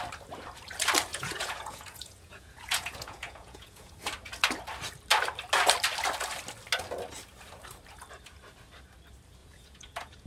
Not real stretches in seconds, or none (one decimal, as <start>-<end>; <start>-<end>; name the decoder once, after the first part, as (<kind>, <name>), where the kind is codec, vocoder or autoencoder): 1.1-3.9 (vocoder, Vocos); 9.4-10.3

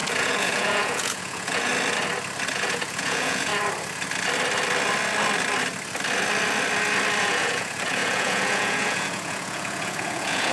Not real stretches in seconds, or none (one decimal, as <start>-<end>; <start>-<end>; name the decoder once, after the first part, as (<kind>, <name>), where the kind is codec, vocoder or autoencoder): 0.0-1.7 (vocoder, Vocos); 2.5-3.5; 7.2-10.5